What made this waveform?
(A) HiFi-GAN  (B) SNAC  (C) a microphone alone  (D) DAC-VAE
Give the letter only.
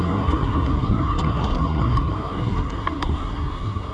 B